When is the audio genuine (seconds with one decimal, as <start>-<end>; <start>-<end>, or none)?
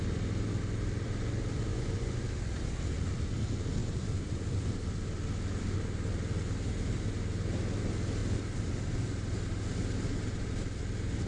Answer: 0.0-1.7; 2.2-11.3